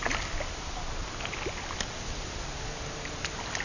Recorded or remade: recorded